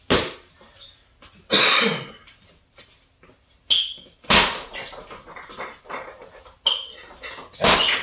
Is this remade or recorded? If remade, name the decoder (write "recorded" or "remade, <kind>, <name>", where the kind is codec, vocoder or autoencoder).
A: recorded